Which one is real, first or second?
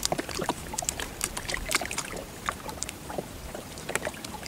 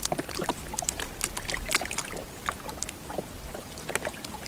second